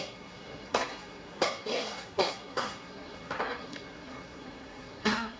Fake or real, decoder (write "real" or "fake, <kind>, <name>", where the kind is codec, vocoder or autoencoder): fake, codec, SNAC